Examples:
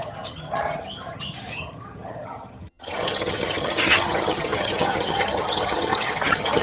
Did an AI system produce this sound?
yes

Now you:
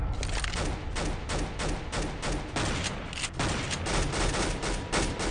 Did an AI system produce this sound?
no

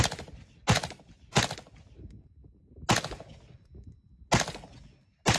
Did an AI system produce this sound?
no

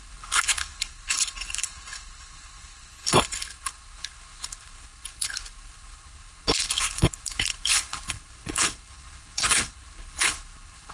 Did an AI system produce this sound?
yes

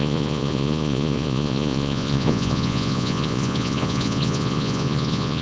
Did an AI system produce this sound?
yes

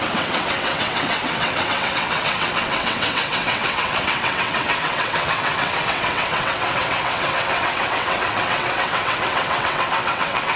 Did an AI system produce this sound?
yes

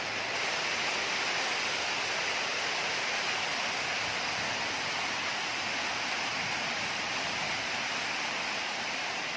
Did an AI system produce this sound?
yes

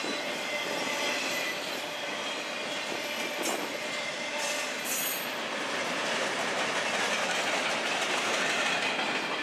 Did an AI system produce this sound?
no